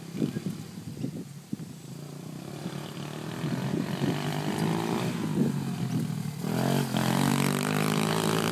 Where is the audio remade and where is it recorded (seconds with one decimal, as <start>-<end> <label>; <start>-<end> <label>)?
0.0-8.5 recorded

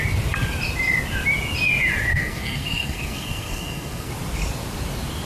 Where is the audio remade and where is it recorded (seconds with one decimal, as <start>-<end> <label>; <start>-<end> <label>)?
0.0-2.1 recorded; 2.1-4.1 remade; 4.1-5.2 recorded

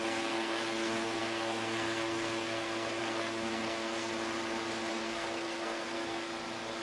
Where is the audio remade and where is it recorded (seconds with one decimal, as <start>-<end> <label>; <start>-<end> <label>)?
0.0-4.1 remade; 4.1-4.9 recorded; 4.9-6.3 remade; 6.3-6.8 recorded

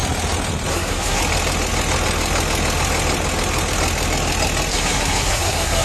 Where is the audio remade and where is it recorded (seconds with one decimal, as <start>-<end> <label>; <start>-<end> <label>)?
0.0-0.7 recorded; 0.7-1.2 remade; 1.2-4.7 recorded; 4.7-5.8 remade

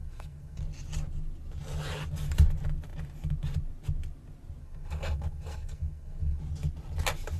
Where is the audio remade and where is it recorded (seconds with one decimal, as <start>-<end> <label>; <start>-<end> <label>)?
0.0-0.6 remade; 0.6-4.6 recorded; 4.6-6.4 remade; 6.4-7.4 recorded